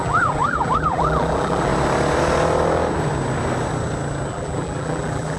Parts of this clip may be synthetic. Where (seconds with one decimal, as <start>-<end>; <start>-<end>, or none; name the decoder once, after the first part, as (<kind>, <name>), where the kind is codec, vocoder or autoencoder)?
0.0-1.7 (vocoder, BigVGAN v2); 4.3-5.4

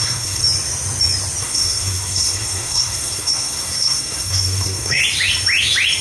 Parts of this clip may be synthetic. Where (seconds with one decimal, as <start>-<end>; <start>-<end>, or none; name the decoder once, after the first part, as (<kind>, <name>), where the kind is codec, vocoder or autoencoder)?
0.0-0.4 (codec, SNAC); 1.4-5.0

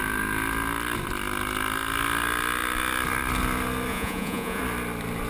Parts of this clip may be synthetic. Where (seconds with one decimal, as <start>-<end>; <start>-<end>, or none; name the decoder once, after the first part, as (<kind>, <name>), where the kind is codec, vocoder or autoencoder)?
3.9-4.6 (vocoder, Vocos)

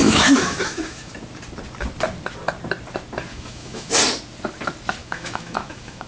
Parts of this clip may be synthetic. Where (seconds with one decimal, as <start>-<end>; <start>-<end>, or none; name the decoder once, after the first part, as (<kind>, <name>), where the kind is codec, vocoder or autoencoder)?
0.0-1.1 (autoencoder, DAC-VAE); 3.3-3.9; 5.0-6.1

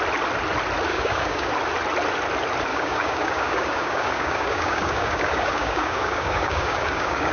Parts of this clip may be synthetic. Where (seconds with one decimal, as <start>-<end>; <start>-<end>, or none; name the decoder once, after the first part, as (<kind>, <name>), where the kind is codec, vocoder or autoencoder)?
0.9-1.5 (codec, DAC); 2.7-7.3